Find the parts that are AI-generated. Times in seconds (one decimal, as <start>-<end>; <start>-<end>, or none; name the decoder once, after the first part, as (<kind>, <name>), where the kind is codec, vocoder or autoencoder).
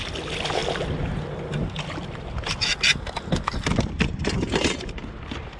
0.0-0.6 (vocoder, BigVGAN v2); 4.0-5.0